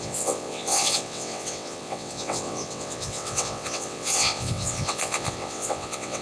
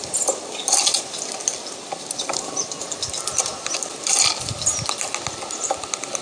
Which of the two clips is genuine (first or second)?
second